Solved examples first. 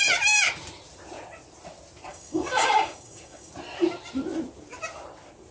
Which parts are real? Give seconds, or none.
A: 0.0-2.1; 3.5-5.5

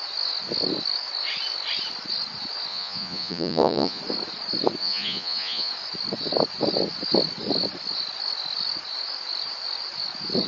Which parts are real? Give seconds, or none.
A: 0.0-2.7; 4.0-4.8; 5.7-10.5

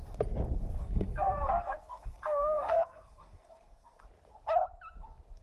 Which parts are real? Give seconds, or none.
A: 0.0-0.8; 4.0-5.4

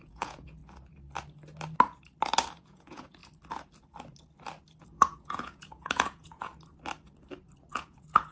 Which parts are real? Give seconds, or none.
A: 0.6-2.5; 3.2-4.8; 6.5-7.7

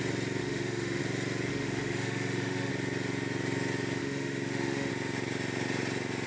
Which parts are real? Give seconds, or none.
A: 0.0-0.4; 1.0-1.5; 2.7-4.0; 4.9-6.3